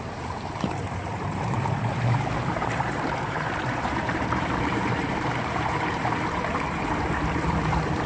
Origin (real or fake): fake